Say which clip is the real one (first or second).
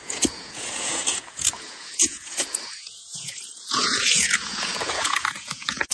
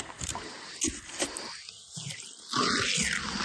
second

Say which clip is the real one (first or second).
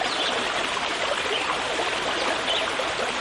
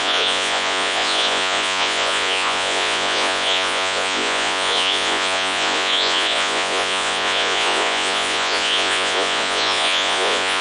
first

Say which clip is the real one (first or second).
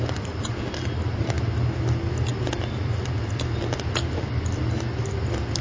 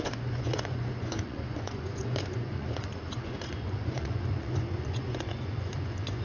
first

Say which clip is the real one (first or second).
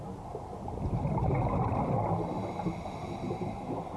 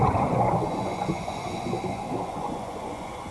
first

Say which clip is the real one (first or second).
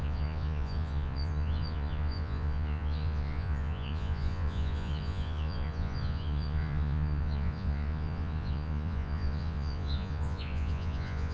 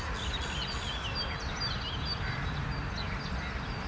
second